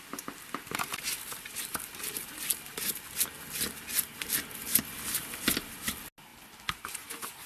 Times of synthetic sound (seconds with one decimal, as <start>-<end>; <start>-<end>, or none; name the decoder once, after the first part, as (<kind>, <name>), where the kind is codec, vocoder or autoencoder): none